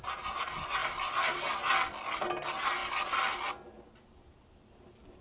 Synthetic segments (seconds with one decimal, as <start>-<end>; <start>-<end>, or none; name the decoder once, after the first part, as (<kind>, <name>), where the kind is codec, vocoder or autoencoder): none